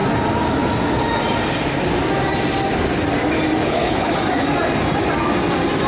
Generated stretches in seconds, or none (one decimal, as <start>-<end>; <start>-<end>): 3.6-4.1